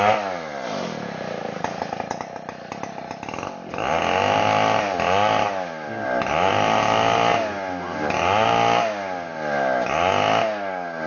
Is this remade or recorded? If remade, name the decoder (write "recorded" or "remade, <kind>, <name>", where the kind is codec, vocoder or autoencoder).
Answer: recorded